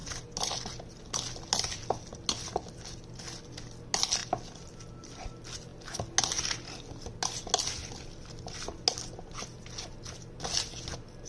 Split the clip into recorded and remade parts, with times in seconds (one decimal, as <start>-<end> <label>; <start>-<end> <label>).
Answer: 0.0-11.3 recorded